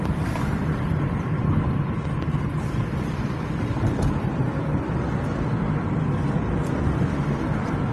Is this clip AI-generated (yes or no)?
yes